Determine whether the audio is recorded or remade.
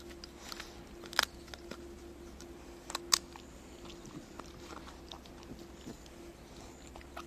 recorded